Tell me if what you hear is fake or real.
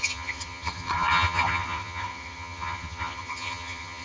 fake